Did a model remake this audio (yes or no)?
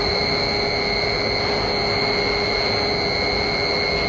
no